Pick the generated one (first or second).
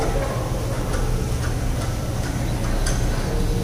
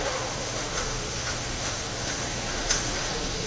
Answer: second